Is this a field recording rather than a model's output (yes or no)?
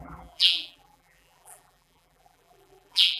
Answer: no